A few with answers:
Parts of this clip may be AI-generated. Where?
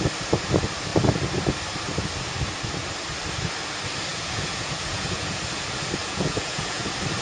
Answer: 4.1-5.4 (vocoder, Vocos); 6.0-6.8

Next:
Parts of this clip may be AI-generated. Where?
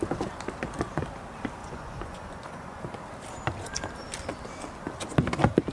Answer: 1.6-2.8 (vocoder, Vocos)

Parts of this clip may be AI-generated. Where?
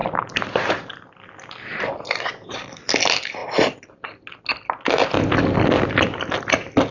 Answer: none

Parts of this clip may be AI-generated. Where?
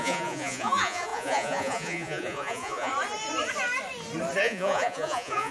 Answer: 0.0-2.9 (vocoder, Vocos); 4.4-5.5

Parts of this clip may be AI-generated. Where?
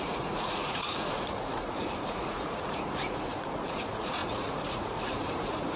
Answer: 0.0-5.8 (vocoder, Vocos)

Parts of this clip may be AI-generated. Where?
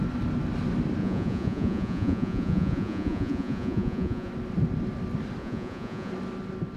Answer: 1.0-4.3 (vocoder, Vocos); 5.4-6.1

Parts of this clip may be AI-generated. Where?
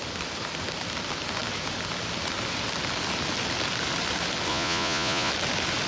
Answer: 4.5-5.3 (vocoder, Vocos)